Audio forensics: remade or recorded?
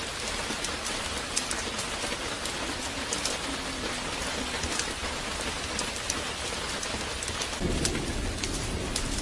recorded